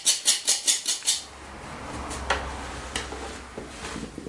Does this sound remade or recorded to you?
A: recorded